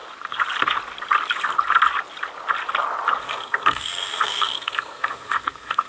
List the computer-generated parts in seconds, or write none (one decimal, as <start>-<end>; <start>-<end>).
3.2-5.9